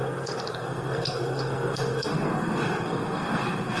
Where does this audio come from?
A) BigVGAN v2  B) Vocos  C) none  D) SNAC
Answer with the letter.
D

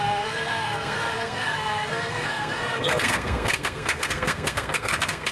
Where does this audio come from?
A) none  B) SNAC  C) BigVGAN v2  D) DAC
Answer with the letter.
B